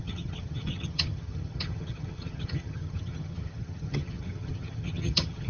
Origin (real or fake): fake